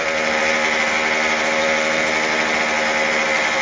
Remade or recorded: recorded